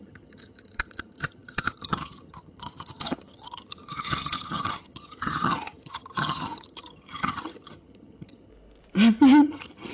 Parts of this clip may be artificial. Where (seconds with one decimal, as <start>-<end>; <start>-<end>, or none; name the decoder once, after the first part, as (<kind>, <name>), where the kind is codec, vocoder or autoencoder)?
0.0-8.5 (vocoder, HiFi-GAN); 9.2-9.9